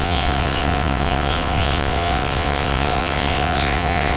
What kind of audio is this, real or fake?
fake